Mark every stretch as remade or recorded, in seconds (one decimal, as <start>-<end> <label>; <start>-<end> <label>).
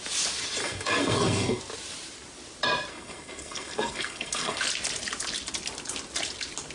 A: 0.0-0.6 recorded; 0.6-1.6 remade; 1.6-2.9 recorded; 2.9-4.6 remade; 4.6-6.7 recorded